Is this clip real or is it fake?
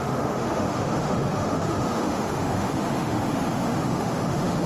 fake